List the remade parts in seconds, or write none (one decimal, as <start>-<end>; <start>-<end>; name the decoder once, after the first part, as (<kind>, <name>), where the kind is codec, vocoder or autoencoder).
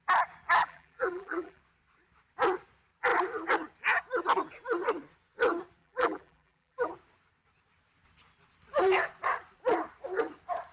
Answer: 0.6-1.6 (vocoder, BigVGAN v2); 5.8-6.9